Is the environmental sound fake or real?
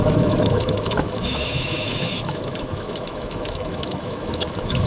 fake